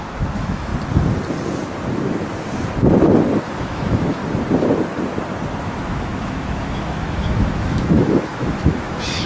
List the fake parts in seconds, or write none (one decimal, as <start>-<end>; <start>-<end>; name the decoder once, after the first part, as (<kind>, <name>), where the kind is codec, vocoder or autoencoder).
0.0-0.7 (autoencoder, DAC-VAE); 3.4-4.2; 5.6-9.3